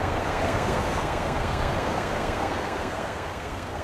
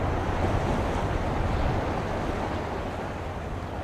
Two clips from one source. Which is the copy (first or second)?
first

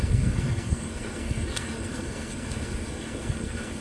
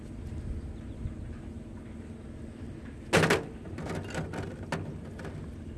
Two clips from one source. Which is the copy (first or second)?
first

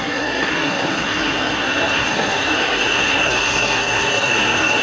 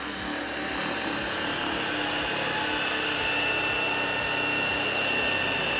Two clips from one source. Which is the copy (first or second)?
first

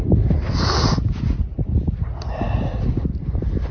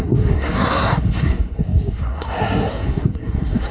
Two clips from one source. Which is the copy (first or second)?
second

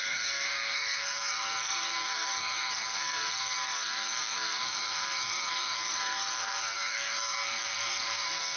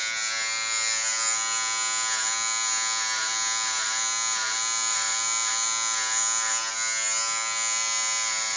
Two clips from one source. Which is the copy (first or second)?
first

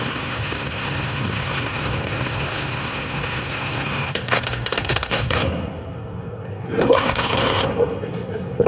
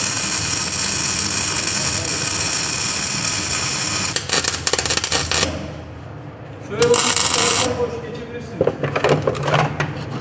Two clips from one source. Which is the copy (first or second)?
first